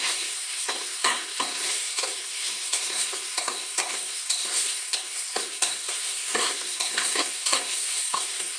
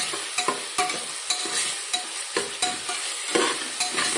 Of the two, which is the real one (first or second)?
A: second